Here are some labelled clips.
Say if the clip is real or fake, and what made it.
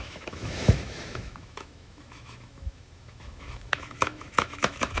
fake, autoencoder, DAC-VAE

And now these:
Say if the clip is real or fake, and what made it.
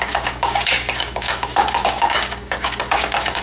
fake, codec, DAC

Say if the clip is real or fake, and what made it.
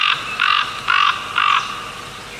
real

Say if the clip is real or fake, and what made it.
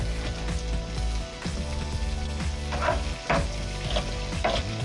real